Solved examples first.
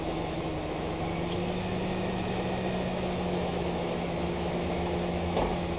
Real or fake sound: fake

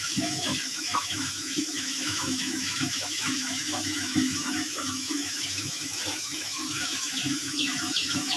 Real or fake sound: fake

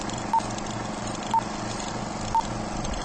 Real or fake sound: real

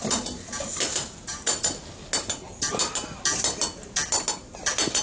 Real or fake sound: real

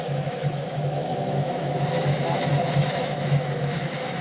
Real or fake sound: fake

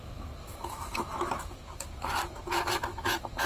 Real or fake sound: fake